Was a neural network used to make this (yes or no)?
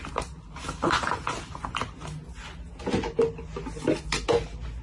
no